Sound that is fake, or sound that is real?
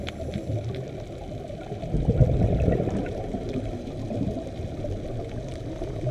real